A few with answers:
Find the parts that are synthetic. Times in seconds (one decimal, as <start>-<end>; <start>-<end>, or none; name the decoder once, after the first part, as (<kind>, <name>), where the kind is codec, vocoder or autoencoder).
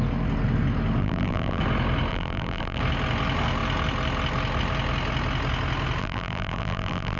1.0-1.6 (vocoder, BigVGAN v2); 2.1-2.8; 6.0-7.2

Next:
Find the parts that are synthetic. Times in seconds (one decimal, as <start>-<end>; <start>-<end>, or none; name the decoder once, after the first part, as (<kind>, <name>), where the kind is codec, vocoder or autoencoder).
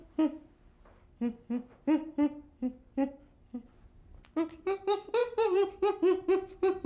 0.0-4.1 (vocoder, BigVGAN v2); 5.2-5.7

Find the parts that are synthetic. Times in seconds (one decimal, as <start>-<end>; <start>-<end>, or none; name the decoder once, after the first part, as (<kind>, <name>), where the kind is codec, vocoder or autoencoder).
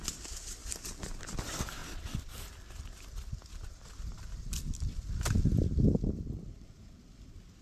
0.0-1.8 (vocoder, BigVGAN v2); 4.4-7.6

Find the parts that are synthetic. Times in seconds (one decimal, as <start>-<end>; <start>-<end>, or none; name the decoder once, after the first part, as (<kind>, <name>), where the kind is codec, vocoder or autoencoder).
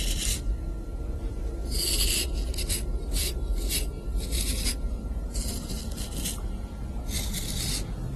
0.0-1.6 (vocoder, BigVGAN v2); 2.5-3.1; 7.4-8.2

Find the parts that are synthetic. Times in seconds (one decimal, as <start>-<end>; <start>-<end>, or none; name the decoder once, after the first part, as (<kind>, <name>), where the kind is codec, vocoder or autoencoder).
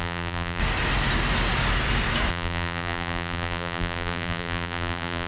0.0-0.6 (vocoder, BigVGAN v2); 2.3-5.3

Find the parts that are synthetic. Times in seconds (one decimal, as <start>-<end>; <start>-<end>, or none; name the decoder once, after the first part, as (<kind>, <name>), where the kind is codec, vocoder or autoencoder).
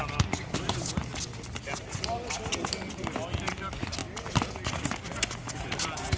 none